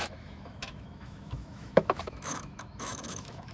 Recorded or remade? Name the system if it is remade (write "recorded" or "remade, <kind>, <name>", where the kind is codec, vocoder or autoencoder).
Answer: remade, autoencoder, DAC-VAE